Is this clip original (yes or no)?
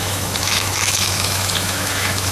no